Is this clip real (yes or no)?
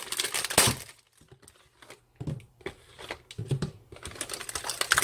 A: yes